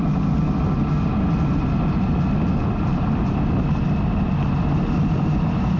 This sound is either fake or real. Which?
real